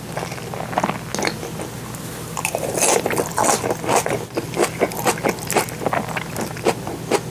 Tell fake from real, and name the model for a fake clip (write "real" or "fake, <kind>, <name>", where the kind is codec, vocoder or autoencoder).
real